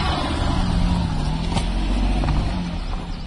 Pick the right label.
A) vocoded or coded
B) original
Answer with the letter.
B